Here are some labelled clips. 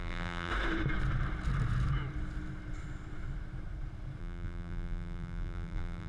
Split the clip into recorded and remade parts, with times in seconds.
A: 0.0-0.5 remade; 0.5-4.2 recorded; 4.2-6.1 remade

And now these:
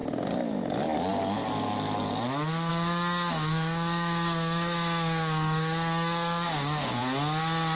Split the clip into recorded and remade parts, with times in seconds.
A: 0.0-2.7 recorded; 2.7-7.0 remade; 7.0-7.7 recorded

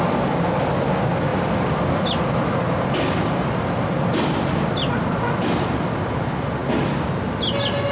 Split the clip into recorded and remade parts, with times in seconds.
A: 0.0-7.9 recorded

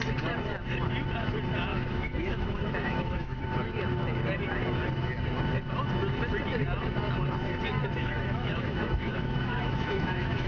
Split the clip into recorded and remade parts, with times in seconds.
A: 0.0-1.7 recorded; 1.7-3.4 remade; 3.4-8.0 recorded; 8.0-10.5 remade

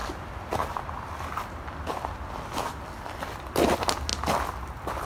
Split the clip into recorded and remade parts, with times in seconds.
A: 0.0-5.0 recorded

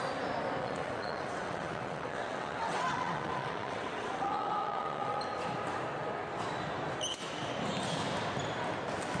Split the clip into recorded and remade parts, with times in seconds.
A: 0.0-0.6 recorded; 0.6-5.2 remade; 5.2-9.2 recorded

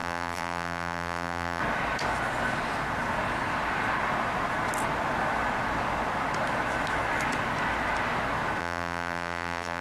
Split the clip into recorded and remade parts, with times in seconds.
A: 0.0-1.6 remade; 1.6-8.6 recorded; 8.6-9.8 remade